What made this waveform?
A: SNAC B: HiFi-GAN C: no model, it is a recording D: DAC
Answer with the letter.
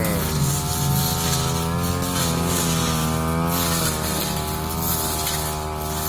C